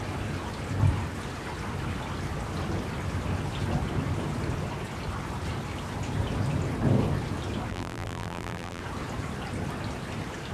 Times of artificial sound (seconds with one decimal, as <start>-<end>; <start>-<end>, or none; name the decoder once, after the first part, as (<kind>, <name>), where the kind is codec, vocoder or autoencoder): 7.7-8.8 (vocoder, BigVGAN v2)